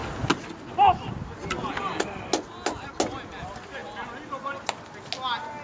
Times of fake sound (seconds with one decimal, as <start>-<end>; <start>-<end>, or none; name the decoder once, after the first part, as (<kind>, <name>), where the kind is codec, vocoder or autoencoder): none